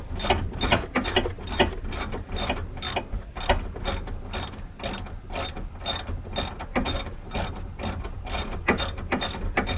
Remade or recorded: recorded